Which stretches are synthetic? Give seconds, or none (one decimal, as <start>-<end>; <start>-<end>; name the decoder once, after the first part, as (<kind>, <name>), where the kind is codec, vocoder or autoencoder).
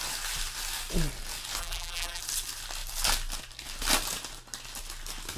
1.6-2.2 (vocoder, BigVGAN v2)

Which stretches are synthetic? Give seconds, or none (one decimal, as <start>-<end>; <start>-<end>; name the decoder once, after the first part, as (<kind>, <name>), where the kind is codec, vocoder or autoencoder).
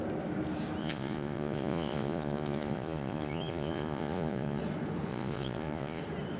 0.8-4.6 (vocoder, Vocos); 5.1-6.0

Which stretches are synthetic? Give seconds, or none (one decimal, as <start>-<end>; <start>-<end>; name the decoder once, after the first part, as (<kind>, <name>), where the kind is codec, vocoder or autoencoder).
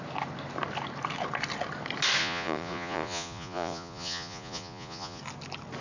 2.2-5.2 (vocoder, Vocos)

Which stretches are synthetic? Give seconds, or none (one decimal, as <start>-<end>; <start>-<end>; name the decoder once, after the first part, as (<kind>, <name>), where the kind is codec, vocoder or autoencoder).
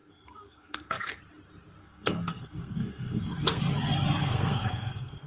0.0-1.2 (codec, SNAC); 1.8-3.6; 4.2-5.3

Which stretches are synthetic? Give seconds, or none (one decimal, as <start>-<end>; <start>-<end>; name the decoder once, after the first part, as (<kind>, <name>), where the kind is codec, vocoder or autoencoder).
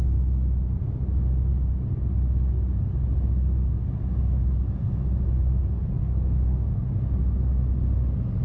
6.0-6.7 (codec, SNAC)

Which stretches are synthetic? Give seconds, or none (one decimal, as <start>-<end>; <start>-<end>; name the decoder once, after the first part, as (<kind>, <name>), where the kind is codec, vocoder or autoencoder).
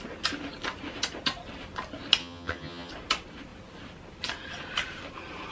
2.2-2.9 (vocoder, HiFi-GAN)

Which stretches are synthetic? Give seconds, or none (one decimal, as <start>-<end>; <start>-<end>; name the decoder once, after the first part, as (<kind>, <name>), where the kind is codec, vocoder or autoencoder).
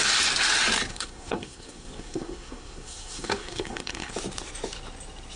0.9-4.1 (codec, SNAC)